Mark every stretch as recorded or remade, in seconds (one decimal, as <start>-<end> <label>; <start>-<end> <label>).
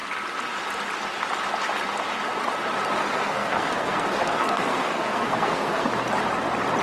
0.0-3.0 recorded; 3.0-5.9 remade; 5.9-6.8 recorded